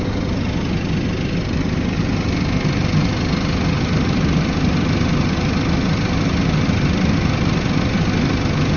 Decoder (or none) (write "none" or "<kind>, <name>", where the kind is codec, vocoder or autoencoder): none